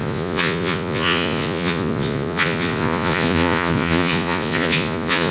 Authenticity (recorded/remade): remade